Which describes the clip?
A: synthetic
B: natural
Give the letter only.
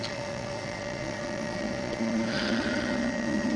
A